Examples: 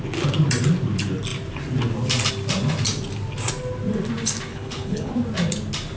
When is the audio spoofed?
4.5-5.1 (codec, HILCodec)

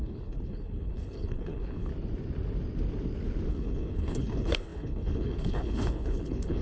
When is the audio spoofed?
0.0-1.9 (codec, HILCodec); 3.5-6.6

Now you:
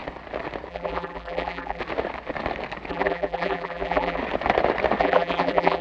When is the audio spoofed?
0.7-1.8 (vocoder, BigVGAN v2); 2.9-4.2; 5.0-5.8

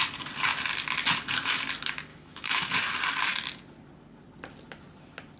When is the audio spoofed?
2.1-2.7 (autoencoder, DAC-VAE)

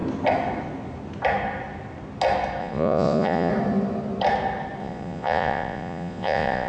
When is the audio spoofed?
2.6-3.5 (vocoder, Vocos); 4.8-6.7

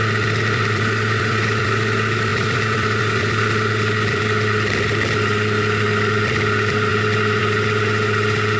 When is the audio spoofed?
0.0-8.6 (vocoder, BigVGAN v2)